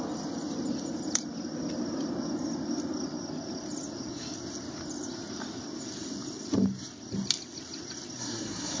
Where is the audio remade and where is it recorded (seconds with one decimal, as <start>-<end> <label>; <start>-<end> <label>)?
0.0-8.2 recorded; 8.2-8.8 remade